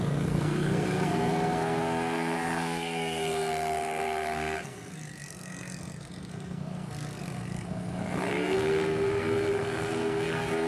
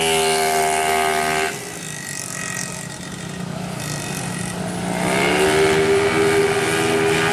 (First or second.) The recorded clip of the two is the second